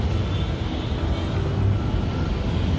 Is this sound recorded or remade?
recorded